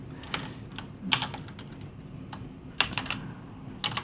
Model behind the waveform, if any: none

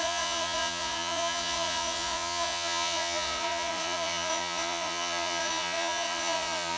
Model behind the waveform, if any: vocoder, Vocos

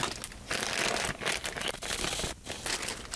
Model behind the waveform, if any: none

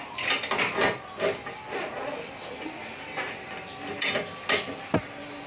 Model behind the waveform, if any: none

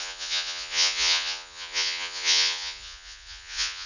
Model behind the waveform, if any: vocoder, Vocos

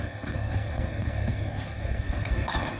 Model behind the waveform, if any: codec, SNAC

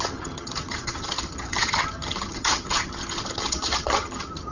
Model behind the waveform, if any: vocoder, HiFi-GAN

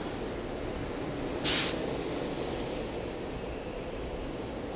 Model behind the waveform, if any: none